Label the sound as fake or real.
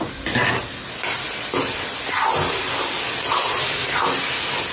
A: real